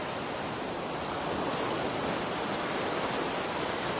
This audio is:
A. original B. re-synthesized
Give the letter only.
A